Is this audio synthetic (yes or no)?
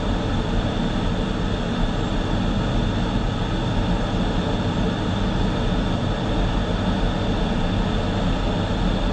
no